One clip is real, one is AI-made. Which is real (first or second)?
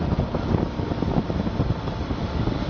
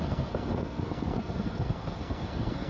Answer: first